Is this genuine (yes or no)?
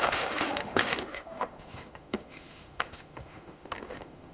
no